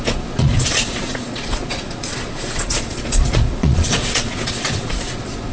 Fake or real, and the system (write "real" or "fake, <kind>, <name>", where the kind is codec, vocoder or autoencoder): fake, vocoder, Vocos